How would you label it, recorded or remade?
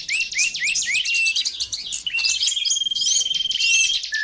remade